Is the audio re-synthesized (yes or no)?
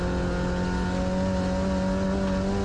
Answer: no